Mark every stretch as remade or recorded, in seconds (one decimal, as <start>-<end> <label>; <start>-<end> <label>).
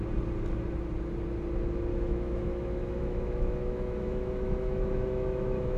0.0-1.9 recorded; 1.9-5.8 remade